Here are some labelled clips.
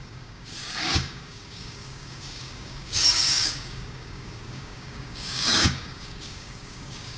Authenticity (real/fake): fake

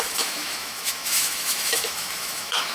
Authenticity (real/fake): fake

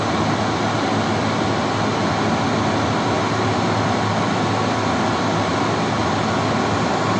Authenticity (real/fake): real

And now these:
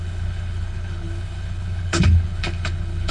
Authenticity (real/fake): fake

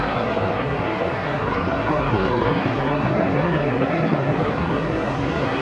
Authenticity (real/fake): fake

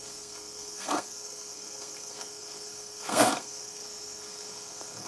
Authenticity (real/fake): fake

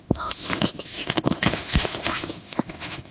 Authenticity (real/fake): fake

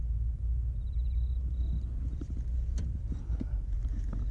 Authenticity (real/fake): real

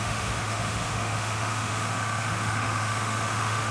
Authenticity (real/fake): fake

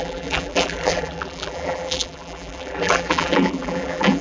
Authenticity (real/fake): fake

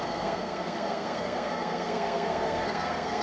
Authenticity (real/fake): fake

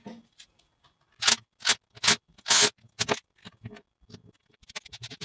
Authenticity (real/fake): real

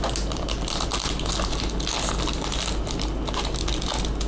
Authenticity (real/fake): real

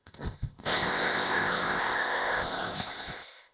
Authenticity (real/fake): fake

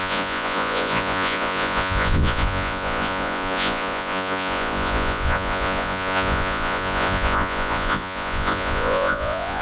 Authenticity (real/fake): fake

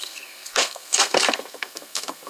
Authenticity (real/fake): fake